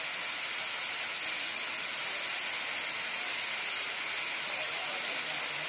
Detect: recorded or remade recorded